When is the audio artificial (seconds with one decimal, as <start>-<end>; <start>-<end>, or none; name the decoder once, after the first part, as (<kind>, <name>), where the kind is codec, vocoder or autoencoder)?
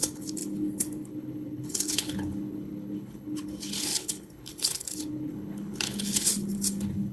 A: 0.0-7.1 (codec, HILCodec)